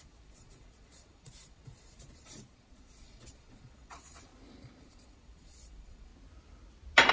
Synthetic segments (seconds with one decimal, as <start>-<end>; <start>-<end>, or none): 0.0-4.3; 4.8-6.1